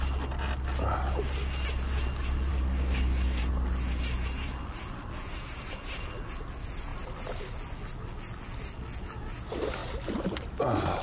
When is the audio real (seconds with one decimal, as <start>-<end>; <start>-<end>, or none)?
0.0-2.5; 3.4-11.0